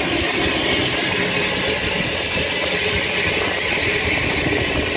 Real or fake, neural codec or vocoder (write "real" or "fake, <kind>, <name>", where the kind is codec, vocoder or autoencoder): real